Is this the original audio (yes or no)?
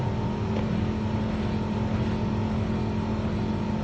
yes